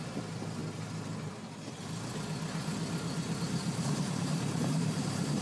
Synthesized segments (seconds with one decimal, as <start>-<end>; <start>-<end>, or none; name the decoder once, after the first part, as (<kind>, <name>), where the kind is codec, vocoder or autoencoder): 3.6-5.4 (vocoder, BigVGAN v2)